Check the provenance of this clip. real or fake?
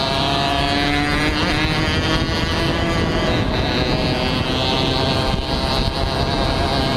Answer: real